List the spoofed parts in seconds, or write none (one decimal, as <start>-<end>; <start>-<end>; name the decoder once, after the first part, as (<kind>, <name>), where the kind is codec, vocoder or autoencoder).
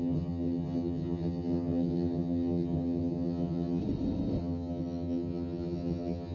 0.0-3.8 (vocoder, HiFi-GAN); 4.4-6.3